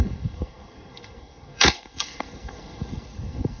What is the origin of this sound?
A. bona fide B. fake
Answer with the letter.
B